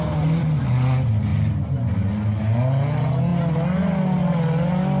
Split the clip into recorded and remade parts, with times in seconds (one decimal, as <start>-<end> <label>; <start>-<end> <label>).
0.0-5.0 recorded